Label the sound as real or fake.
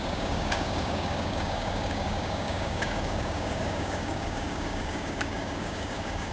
fake